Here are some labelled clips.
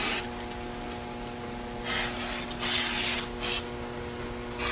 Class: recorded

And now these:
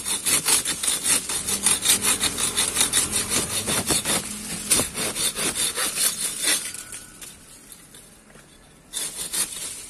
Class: recorded